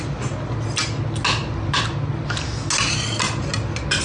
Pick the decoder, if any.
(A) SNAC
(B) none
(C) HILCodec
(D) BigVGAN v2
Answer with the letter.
B